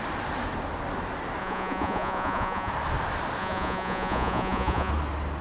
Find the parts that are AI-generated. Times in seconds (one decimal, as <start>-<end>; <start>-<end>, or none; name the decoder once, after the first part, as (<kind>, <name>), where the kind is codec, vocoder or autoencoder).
1.4-2.7 (vocoder, Vocos); 3.4-4.9